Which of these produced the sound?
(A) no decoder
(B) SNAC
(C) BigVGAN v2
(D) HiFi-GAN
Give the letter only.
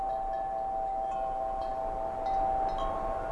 A